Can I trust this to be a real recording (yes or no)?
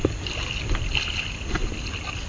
yes